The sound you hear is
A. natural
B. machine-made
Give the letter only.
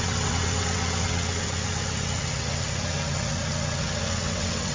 B